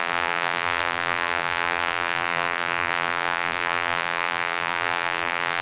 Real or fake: fake